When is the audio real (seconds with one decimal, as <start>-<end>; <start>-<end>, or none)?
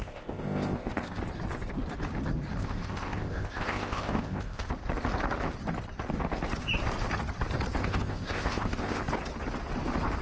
1.2-2.6; 4.7-7.8; 9.0-10.2